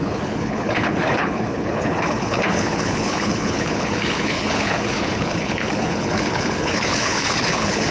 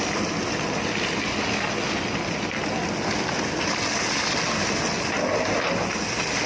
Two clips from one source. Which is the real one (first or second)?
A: second